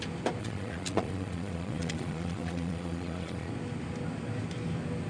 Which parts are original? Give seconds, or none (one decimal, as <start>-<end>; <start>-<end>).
0.0-0.4; 3.5-5.1